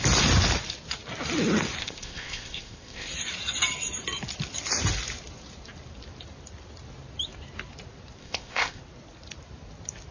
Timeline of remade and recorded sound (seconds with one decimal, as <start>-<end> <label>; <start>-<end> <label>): 0.0-1.8 recorded; 1.8-3.1 remade; 3.1-8.2 recorded; 8.2-8.8 remade; 8.8-10.1 recorded